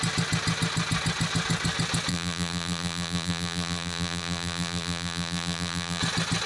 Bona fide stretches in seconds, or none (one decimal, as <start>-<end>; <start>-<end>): 0.0-2.1; 6.0-6.5